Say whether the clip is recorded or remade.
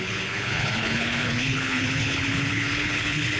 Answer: remade